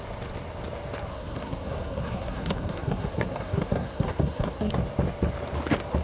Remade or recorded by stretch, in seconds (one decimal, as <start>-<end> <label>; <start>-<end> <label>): 0.0-1.1 recorded; 1.1-4.7 remade; 4.7-6.0 recorded